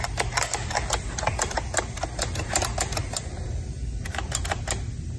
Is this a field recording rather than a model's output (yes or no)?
yes